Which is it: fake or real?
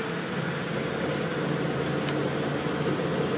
real